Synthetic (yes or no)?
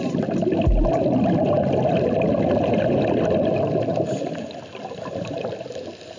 no